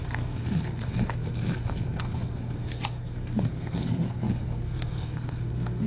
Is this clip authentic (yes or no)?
no